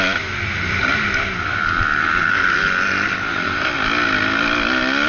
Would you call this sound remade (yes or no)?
no